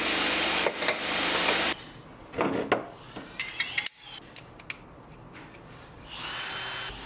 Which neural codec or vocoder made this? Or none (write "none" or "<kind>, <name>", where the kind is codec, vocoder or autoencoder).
none